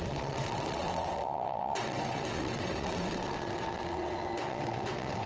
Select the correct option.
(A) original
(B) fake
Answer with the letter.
B